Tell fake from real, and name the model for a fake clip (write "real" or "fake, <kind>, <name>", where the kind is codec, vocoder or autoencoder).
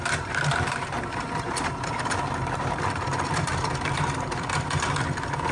fake, vocoder, BigVGAN v2